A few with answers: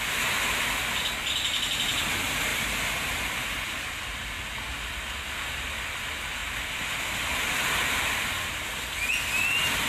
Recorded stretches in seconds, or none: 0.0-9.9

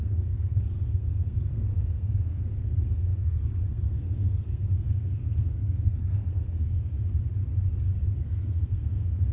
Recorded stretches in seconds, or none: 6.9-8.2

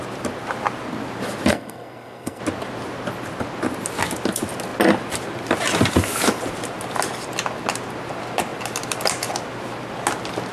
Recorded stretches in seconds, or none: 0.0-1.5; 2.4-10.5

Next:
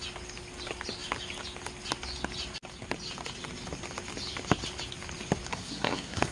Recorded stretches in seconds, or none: 0.0-5.5

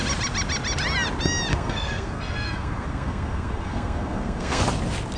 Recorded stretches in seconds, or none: 0.0-1.5; 4.6-5.2